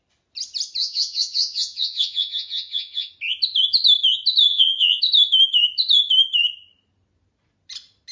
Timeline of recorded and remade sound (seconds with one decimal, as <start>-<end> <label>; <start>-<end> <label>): 0.0-0.8 recorded; 0.8-3.1 remade; 3.1-4.5 recorded; 4.5-5.0 remade; 5.0-8.1 recorded